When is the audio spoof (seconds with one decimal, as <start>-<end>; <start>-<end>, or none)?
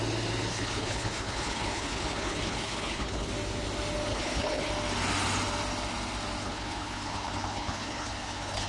0.5-3.3; 4.1-4.7; 6.4-8.7